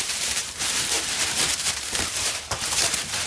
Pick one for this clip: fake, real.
fake